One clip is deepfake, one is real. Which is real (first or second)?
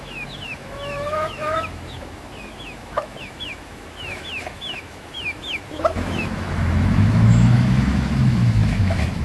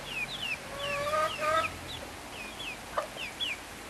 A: second